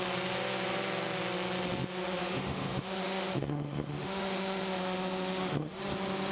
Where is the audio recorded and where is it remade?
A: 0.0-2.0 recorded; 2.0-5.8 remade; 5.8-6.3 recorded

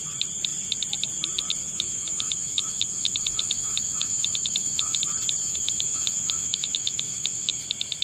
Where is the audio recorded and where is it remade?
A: 0.0-1.6 recorded; 1.6-5.0 remade; 5.0-5.4 recorded; 5.4-7.6 remade; 7.6-8.0 recorded